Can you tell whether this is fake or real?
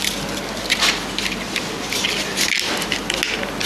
real